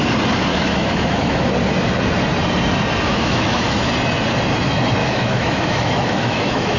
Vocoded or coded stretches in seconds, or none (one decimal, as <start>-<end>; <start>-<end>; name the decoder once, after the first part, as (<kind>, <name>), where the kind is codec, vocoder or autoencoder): 0.5-1.5 (autoencoder, DAC-VAE); 3.1-3.9; 5.0-6.8